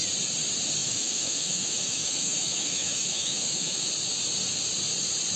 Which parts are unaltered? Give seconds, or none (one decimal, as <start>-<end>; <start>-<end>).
0.0-0.8; 3.9-5.4